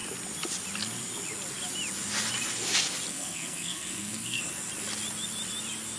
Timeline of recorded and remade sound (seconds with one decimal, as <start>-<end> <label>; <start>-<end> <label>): 0.0-3.1 recorded; 3.1-4.4 remade; 4.4-6.0 recorded